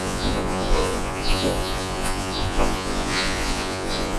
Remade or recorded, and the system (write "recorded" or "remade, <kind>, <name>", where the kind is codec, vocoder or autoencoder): remade, vocoder, Vocos